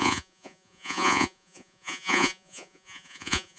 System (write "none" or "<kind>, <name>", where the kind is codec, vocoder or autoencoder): vocoder, Vocos